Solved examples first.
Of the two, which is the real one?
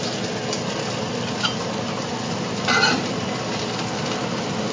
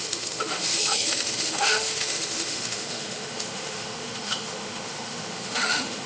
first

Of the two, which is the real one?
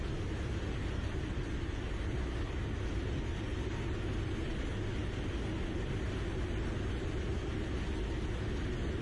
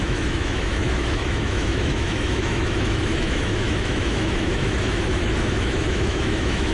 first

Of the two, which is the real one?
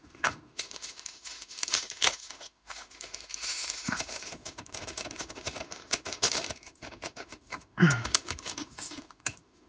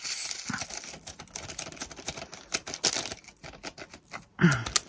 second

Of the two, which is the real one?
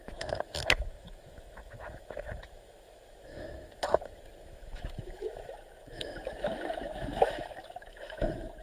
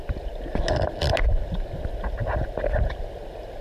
second